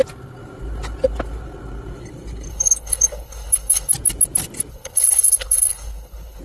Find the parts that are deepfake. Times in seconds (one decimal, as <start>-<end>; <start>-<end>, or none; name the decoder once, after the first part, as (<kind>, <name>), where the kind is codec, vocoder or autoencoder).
2.5-3.9 (codec, HILCodec); 4.7-6.4